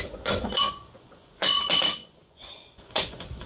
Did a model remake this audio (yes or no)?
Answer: yes